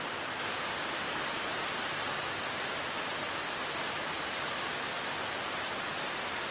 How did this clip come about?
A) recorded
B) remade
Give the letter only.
A